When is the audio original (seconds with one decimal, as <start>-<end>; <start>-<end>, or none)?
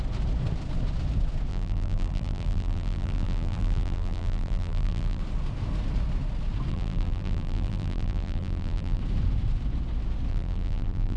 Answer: 0.0-1.5; 5.2-6.7; 9.0-10.3